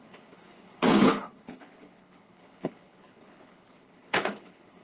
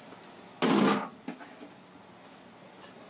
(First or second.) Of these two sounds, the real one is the second